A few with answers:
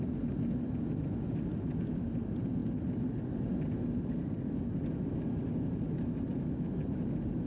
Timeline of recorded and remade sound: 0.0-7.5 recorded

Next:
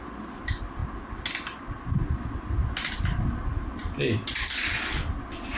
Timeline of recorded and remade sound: 0.0-5.6 recorded